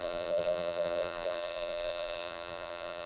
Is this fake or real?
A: fake